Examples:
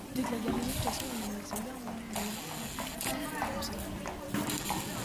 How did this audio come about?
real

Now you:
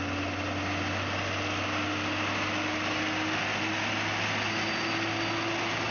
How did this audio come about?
real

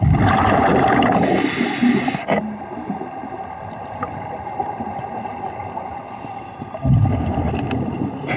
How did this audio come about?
real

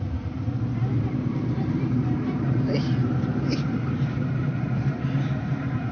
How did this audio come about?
fake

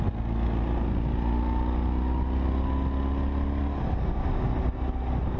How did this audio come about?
real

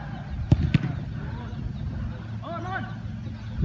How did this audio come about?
real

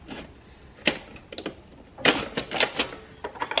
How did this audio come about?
real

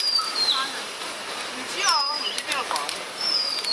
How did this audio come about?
fake